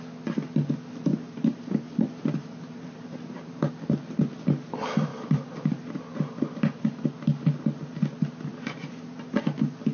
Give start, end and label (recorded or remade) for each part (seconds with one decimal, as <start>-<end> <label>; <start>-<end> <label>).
0.0-1.1 recorded; 1.1-3.7 remade; 3.7-5.1 recorded; 5.1-6.8 remade; 6.8-8.5 recorded; 8.5-9.4 remade; 9.4-9.9 recorded